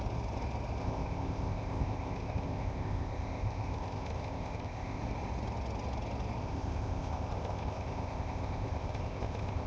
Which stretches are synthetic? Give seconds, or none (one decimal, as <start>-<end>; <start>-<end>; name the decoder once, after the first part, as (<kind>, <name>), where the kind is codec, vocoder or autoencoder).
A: 0.8-5.0 (codec, ZipCodec); 6.4-9.7